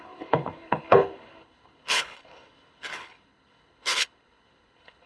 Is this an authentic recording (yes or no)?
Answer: no